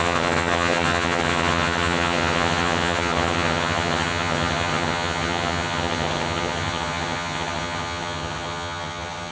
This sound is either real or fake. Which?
fake